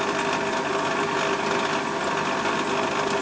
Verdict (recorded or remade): recorded